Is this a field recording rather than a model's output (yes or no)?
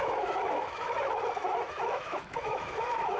no